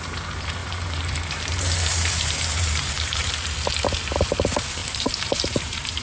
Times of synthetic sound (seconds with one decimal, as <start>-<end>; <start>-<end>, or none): 0.6-3.3; 4.8-6.0